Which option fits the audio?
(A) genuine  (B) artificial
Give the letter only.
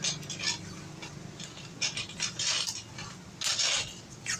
A